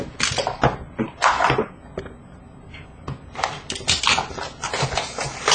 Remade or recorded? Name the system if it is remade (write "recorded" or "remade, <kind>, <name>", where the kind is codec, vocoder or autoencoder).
recorded